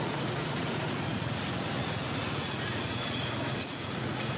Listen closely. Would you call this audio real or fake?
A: fake